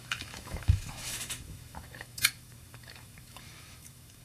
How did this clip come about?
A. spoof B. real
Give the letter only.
A